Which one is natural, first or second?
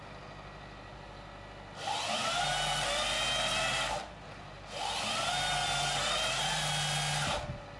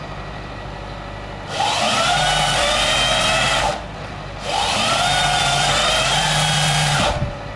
first